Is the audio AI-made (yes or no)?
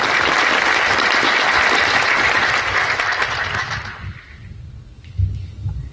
no